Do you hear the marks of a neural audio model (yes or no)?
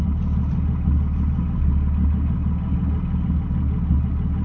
no